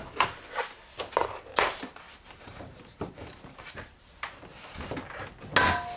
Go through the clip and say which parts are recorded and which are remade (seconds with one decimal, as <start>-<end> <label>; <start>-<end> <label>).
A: 0.0-1.2 recorded; 1.2-4.8 remade; 4.8-6.0 recorded